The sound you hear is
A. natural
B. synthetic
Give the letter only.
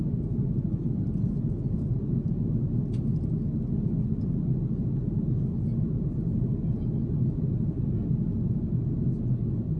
A